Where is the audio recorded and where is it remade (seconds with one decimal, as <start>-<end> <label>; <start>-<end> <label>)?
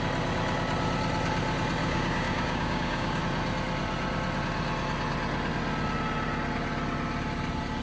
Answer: 0.0-1.8 recorded; 1.8-3.2 remade; 3.2-7.8 recorded